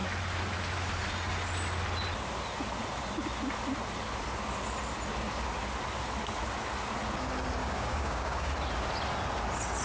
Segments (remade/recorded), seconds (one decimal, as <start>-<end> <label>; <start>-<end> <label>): 0.0-7.6 recorded; 7.6-8.5 remade; 8.5-9.8 recorded